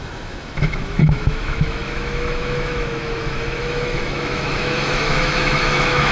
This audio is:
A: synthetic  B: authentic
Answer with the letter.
A